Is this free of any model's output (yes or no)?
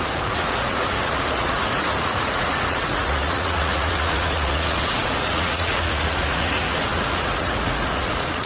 no